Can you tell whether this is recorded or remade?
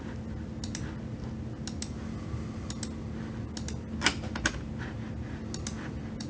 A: recorded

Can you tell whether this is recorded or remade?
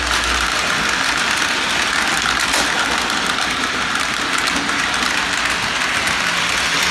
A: recorded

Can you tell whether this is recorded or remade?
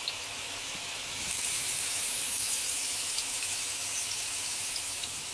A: remade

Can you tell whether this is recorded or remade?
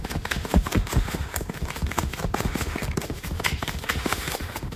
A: remade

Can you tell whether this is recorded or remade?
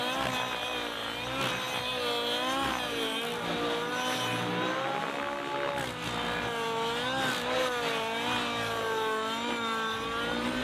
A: recorded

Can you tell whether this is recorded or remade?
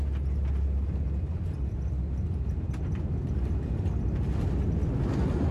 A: recorded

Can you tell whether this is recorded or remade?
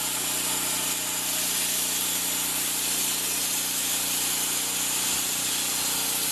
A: recorded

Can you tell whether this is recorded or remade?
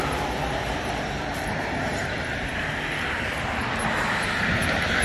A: recorded